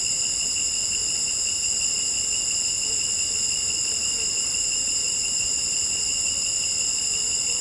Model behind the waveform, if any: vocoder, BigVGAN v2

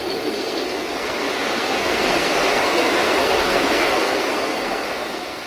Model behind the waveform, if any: codec, SNAC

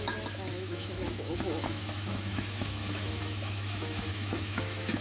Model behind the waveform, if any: autoencoder, DAC-VAE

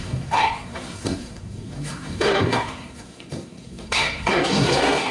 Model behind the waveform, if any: codec, SNAC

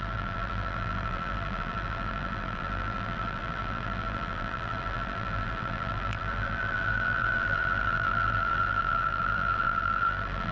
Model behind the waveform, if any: vocoder, BigVGAN v2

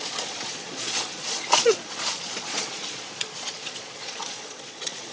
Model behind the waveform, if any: vocoder, Vocos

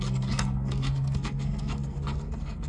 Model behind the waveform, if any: codec, SNAC